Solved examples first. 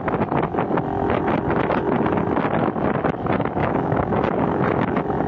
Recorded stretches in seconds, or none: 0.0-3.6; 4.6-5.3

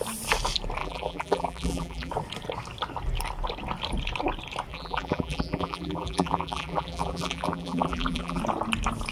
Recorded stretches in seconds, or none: 0.0-0.8; 2.1-4.7; 8.4-9.1

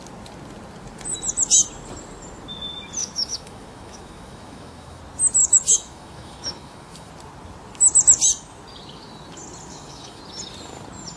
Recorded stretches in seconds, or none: 0.0-3.0; 5.0-5.4; 7.1-9.7; 10.2-11.2

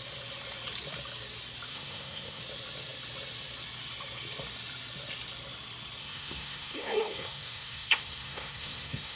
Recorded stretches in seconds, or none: 0.0-1.7; 2.4-6.0

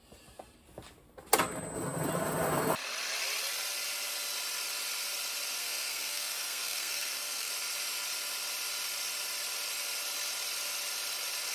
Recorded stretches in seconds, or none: 0.0-5.6; 7.5-11.5

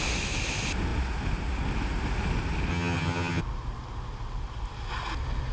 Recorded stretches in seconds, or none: 0.0-2.7; 3.4-5.5